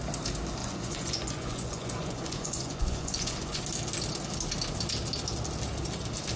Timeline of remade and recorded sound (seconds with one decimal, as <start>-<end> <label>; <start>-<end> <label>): 0.0-0.6 recorded; 0.6-3.6 remade; 3.6-6.4 recorded